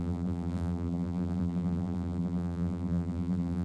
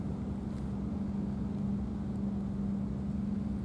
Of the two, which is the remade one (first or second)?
first